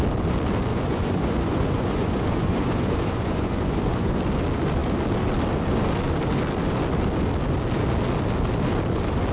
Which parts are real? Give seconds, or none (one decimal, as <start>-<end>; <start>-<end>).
0.0-0.7; 4.2-9.3